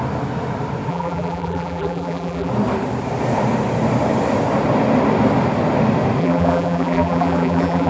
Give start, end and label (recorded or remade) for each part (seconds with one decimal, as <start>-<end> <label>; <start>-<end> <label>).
0.0-0.9 recorded; 0.9-2.5 remade; 2.5-6.2 recorded; 6.2-7.9 remade